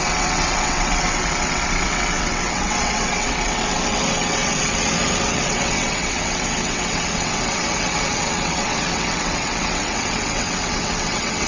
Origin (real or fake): fake